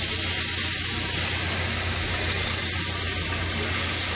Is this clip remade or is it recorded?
recorded